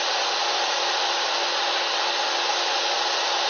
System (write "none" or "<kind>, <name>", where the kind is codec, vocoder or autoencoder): none